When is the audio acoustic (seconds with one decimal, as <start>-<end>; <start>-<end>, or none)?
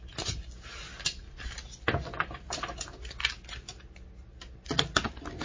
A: 0.0-5.4